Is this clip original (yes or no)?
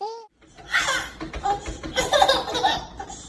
no